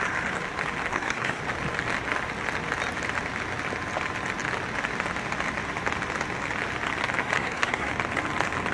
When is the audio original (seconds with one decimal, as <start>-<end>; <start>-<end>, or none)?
0.0-0.9; 1.4-7.2; 7.9-8.7